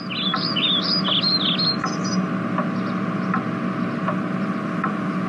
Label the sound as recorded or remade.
recorded